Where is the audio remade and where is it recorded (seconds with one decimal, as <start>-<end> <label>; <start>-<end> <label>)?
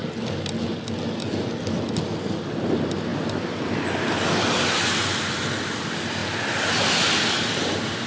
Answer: 0.0-8.1 recorded